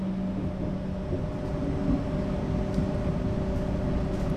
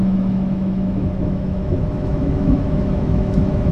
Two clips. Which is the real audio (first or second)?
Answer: first